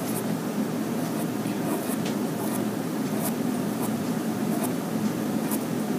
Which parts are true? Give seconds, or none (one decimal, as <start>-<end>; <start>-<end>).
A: 0.0-1.9; 5.5-6.0